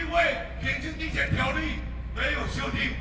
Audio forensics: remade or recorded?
recorded